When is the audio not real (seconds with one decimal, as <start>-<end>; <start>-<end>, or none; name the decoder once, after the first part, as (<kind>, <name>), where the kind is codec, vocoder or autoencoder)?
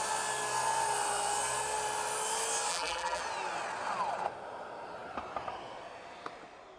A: 2.7-3.2 (vocoder, BigVGAN v2)